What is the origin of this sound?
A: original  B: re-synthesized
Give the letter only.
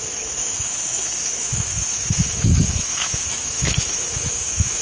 B